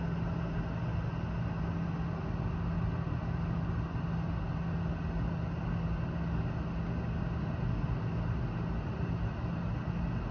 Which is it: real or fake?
real